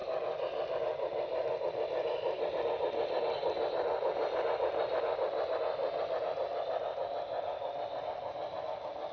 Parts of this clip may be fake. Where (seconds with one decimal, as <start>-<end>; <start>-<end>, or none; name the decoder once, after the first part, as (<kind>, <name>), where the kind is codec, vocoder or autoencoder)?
0.0-5.8 (vocoder, BigVGAN v2); 8.1-9.1

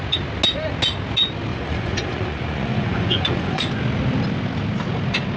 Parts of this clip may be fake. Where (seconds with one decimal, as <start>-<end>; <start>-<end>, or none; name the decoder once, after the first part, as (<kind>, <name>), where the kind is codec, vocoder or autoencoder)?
1.5-3.7 (vocoder, Vocos)

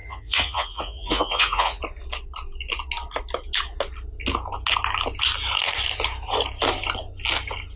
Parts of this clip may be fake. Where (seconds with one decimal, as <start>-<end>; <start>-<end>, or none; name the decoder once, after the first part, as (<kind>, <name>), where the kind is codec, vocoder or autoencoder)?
0.0-1.8 (vocoder, Vocos)

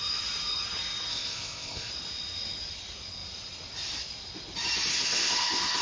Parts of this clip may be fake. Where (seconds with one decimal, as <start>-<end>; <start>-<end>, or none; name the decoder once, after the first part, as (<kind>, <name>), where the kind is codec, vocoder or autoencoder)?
1.1-1.9 (codec, ZipCodec); 4.9-5.8

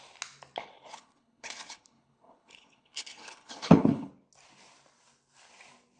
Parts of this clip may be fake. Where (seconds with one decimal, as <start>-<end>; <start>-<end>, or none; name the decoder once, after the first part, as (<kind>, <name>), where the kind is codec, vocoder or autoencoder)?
0.6-4.1 (codec, HILCodec)

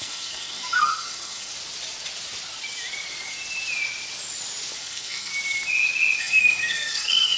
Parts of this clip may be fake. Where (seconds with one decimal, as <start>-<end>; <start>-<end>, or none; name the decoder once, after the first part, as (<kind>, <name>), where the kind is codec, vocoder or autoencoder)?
0.0-1.5 (codec, SNAC); 4.8-5.3; 6.2-7.4

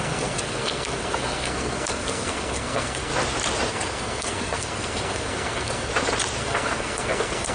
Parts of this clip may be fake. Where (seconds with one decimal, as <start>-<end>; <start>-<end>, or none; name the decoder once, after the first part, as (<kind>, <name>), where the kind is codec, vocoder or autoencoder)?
0.0-3.1 (codec, SNAC); 3.7-5.9; 6.4-7.5

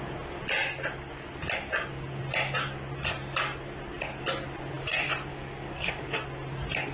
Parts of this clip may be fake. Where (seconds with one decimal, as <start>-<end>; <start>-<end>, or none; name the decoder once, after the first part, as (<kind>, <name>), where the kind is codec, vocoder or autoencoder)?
5.3-6.2 (codec, DAC)